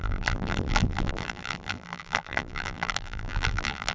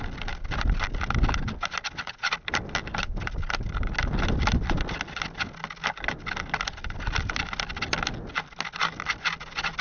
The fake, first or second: first